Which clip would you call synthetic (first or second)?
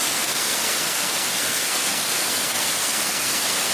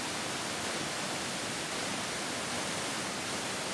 first